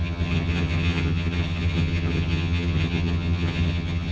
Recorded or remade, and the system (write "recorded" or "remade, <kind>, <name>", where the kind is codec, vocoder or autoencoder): remade, vocoder, HiFi-GAN